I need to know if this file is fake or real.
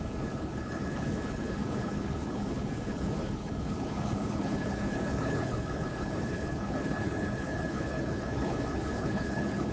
fake